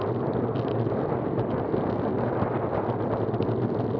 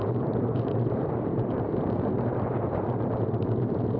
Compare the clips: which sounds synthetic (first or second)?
second